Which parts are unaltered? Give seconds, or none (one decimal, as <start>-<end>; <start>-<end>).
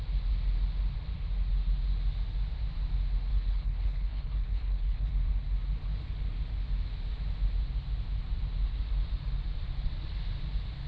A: 0.0-3.3; 5.1-10.9